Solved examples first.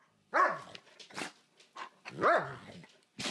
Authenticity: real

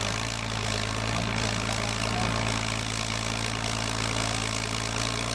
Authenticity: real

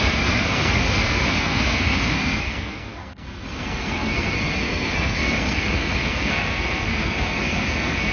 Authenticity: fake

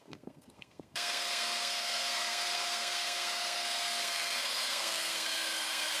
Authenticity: fake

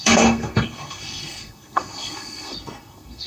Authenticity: fake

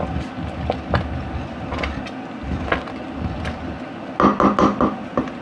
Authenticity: real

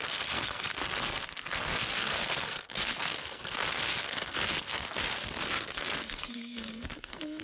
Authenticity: fake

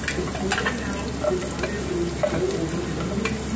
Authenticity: real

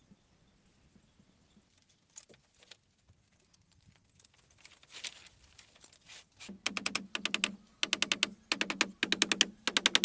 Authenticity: real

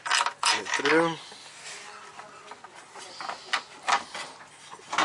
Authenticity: real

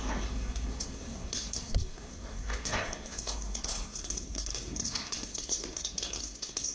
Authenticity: fake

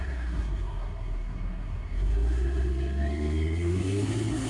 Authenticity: fake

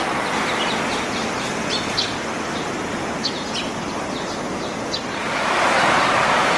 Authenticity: real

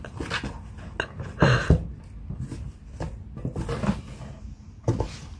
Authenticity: real